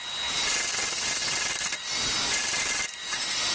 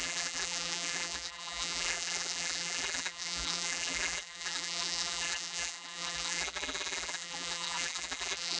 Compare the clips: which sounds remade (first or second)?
second